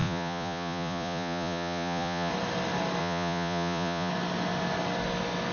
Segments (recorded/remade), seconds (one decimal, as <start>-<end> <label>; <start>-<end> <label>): 0.0-2.3 remade; 2.3-3.0 recorded; 3.0-4.1 remade; 4.1-5.5 recorded

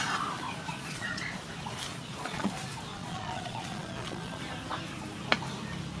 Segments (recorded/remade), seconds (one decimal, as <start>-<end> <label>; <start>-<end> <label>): 0.0-0.7 recorded; 0.7-1.4 remade; 1.4-1.9 recorded; 1.9-2.5 remade; 2.5-2.9 recorded; 2.9-4.4 remade; 4.4-6.0 recorded

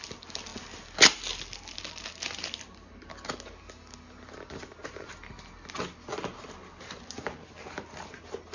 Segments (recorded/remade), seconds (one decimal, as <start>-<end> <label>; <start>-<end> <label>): 0.0-8.5 recorded

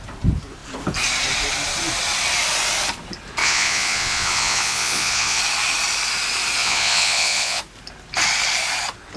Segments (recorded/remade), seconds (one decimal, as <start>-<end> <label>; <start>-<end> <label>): 0.0-3.4 recorded; 3.4-5.4 remade; 5.4-6.6 recorded; 6.6-7.6 remade; 7.6-9.2 recorded

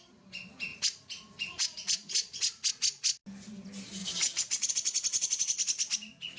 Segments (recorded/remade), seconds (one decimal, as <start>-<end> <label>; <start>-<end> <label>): 0.0-0.7 recorded; 0.7-2.7 remade; 2.7-4.0 recorded; 4.0-4.7 remade; 4.7-6.4 recorded

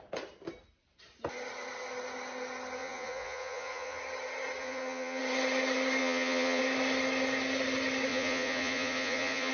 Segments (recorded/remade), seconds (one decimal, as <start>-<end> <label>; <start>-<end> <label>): 0.0-2.8 recorded; 2.8-4.0 remade; 4.0-4.6 recorded; 4.6-5.2 remade; 5.2-6.0 recorded; 6.0-6.6 remade; 6.6-8.1 recorded; 8.1-9.5 remade

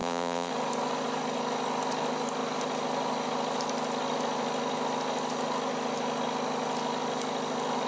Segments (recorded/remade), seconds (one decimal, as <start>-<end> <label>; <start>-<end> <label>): 0.0-0.5 remade; 0.5-7.9 recorded

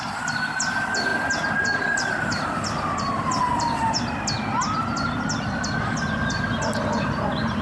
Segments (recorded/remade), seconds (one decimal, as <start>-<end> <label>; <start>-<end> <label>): 0.0-7.6 recorded